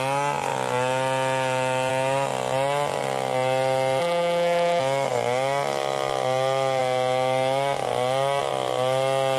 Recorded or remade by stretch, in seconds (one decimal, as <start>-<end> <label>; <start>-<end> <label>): 0.0-4.0 recorded; 4.0-4.8 remade; 4.8-9.4 recorded